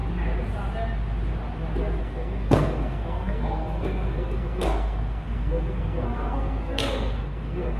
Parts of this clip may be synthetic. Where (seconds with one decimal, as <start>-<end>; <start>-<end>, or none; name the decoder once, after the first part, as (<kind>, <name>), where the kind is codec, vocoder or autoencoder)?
2.0-7.8 (codec, SNAC)